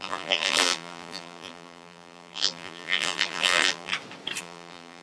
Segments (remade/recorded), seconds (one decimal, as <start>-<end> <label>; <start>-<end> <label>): 0.0-3.9 remade; 3.9-4.4 recorded; 4.4-5.0 remade